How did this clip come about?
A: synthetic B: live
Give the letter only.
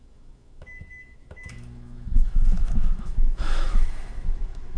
A